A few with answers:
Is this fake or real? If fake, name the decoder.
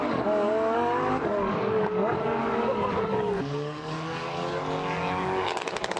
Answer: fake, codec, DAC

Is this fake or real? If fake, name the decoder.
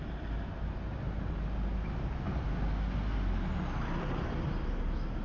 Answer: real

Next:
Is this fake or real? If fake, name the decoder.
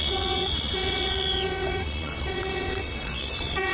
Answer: fake, vocoder, WaveNeXt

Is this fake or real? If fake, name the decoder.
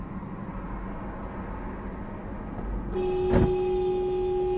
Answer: real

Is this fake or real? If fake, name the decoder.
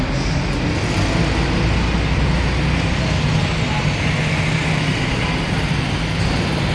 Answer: real